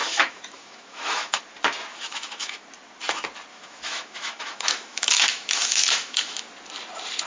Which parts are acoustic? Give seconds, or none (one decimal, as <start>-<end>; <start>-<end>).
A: 1.4-1.9; 2.6-3.5; 6.5-7.3